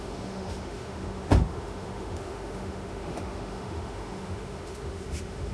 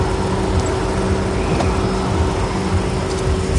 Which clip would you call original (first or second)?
second